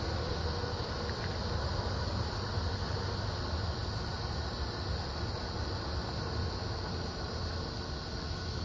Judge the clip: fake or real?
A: real